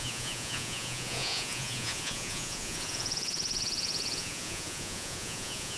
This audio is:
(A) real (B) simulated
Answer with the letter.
B